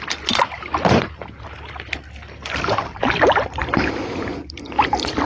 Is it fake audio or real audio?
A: fake